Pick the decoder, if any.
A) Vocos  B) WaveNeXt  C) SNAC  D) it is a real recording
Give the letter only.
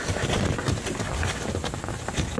D